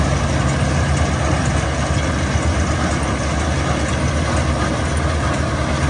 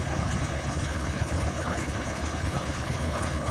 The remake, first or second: second